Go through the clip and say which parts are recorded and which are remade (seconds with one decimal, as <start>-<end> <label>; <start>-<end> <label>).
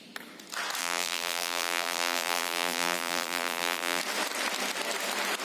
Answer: 0.0-0.8 recorded; 0.8-4.0 remade; 4.0-5.4 recorded